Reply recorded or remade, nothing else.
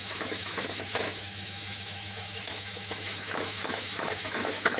remade